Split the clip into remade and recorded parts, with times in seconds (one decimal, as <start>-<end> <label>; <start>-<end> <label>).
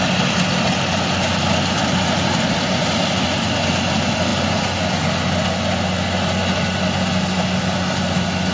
0.0-8.5 recorded